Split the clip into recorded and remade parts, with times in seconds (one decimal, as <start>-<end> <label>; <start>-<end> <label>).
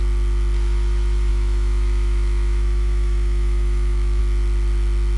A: 0.0-1.3 recorded; 1.3-4.2 remade; 4.2-5.2 recorded